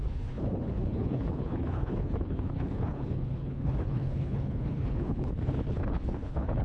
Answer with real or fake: fake